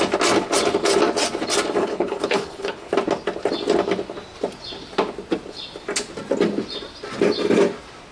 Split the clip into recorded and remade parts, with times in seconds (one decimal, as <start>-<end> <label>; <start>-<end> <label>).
0.0-1.8 recorded; 1.8-2.9 remade; 2.9-8.1 recorded